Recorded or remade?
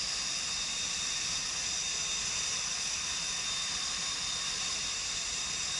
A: recorded